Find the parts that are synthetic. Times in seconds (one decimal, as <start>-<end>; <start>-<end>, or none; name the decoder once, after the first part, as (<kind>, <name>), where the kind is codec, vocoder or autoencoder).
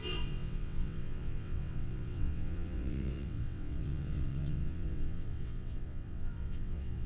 0.0-7.1 (vocoder, WaveNeXt)